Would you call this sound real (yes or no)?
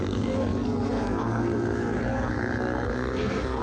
no